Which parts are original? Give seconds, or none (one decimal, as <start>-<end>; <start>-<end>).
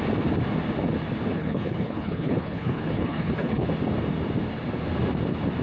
0.0-1.3; 3.7-5.6